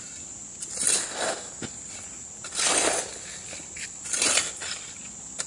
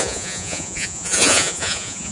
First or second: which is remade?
second